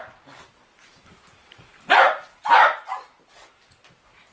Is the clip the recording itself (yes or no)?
yes